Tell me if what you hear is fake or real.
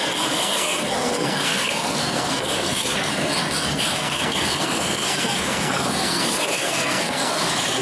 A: fake